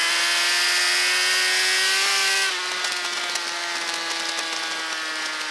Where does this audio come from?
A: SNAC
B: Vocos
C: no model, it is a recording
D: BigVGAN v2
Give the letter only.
C